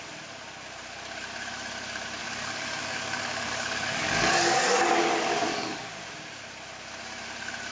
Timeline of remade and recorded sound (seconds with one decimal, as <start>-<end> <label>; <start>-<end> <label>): 0.0-2.2 recorded; 2.2-4.6 remade; 4.6-5.5 recorded; 5.5-6.0 remade; 6.0-7.7 recorded